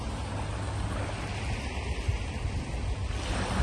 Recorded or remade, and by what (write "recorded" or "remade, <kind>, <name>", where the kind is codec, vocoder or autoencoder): recorded